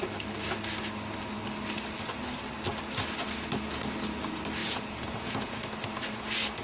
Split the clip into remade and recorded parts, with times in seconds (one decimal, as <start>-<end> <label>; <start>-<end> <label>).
0.0-4.6 recorded; 4.6-5.6 remade; 5.6-6.6 recorded